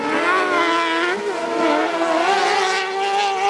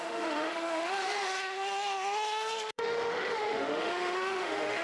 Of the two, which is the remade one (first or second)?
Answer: second